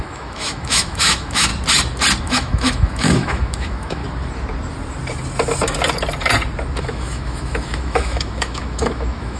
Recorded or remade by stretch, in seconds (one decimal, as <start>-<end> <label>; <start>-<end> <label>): 0.0-1.5 remade; 1.5-2.2 recorded; 2.2-4.0 remade; 4.0-6.8 recorded; 6.8-9.4 remade